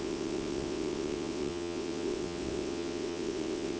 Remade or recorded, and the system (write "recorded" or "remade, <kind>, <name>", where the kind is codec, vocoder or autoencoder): remade, vocoder, WaveNeXt